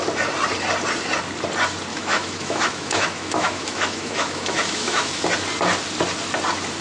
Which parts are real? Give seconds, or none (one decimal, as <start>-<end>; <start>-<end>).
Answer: 0.0-1.9; 5.2-6.8